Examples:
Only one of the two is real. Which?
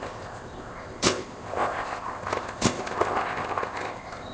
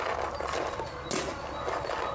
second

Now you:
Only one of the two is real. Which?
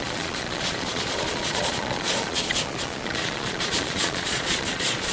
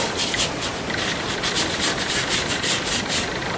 second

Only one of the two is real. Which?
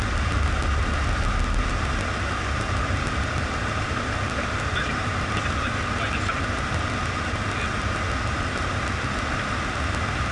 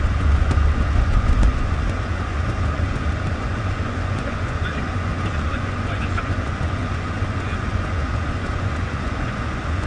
first